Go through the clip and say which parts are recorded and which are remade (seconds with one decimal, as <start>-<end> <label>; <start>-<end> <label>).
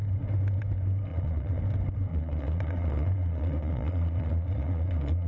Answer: 0.0-1.1 recorded; 1.1-1.6 remade; 1.6-2.1 recorded; 2.1-5.3 remade